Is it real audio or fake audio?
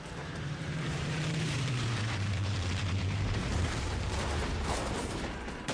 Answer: fake